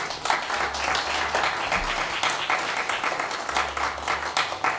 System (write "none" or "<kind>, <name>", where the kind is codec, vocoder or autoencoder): none